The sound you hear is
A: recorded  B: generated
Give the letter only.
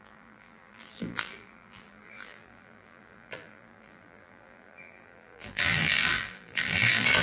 B